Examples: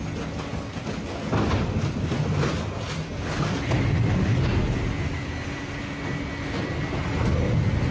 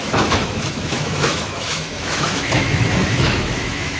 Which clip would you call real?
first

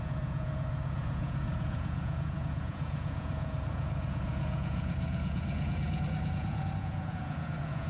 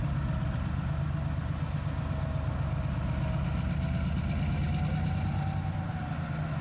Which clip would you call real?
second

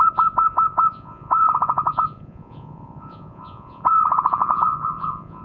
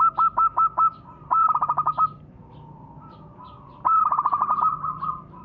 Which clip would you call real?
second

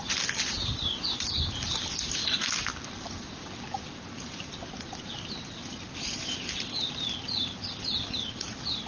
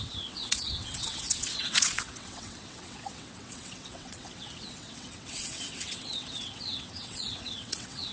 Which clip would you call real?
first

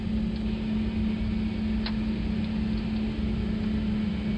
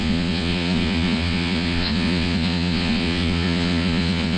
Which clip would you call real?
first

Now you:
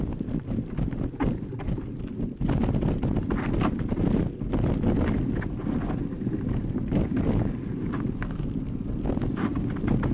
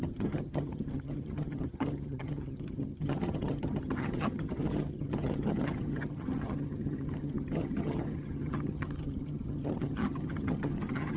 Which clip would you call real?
first